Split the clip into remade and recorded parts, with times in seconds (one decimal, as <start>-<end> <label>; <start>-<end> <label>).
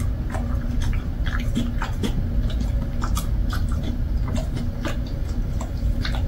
0.0-3.4 recorded; 3.4-4.1 remade; 4.1-6.3 recorded